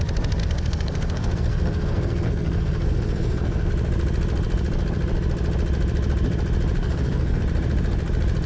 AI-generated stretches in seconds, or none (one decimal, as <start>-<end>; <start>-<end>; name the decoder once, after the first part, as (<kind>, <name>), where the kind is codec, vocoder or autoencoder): 0.4-3.7 (codec, SNAC); 6.8-7.4